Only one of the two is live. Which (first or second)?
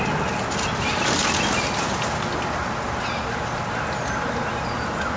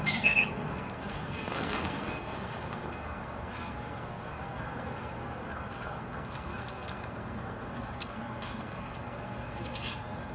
first